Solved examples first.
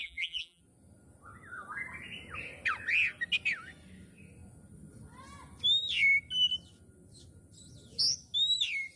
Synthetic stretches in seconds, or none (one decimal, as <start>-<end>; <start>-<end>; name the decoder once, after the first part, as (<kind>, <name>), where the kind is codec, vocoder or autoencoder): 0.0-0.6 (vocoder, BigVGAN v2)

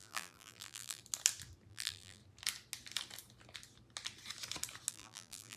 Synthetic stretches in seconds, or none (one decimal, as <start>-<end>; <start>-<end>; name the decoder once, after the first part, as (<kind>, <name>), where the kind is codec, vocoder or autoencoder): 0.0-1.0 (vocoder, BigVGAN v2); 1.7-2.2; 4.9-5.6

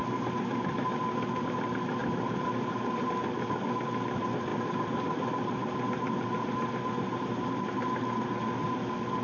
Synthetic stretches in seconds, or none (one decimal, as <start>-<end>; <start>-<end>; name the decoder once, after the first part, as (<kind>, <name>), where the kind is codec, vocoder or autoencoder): 0.0-1.0 (vocoder, BigVGAN v2); 2.0-3.1; 4.5-7.5

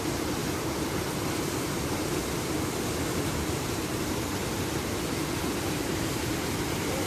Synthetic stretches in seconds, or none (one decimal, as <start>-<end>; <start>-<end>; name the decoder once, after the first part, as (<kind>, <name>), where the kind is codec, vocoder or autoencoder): 0.0-0.4 (vocoder, BigVGAN v2); 3.1-4.4; 6.6-7.1